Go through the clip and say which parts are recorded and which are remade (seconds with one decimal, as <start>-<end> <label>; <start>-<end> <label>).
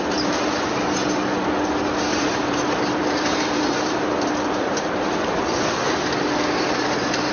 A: 0.0-2.1 recorded; 2.1-5.4 remade; 5.4-7.3 recorded